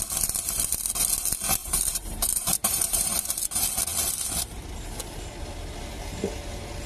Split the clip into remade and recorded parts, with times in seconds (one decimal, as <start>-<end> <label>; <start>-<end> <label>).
0.0-1.6 recorded; 1.6-3.4 remade; 3.4-6.9 recorded